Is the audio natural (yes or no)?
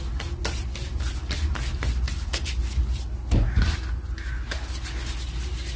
yes